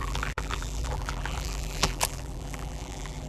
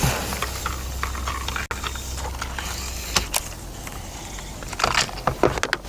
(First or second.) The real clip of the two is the second